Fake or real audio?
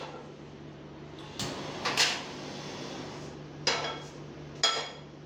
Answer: real